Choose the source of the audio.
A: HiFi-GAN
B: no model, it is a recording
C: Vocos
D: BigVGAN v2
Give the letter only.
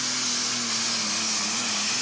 B